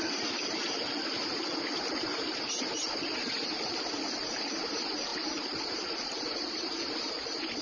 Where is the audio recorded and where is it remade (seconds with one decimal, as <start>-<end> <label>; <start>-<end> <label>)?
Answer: 0.0-7.6 recorded